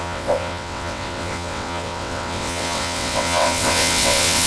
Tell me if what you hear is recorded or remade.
remade